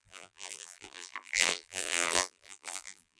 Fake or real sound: fake